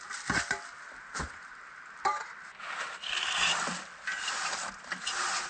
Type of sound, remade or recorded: recorded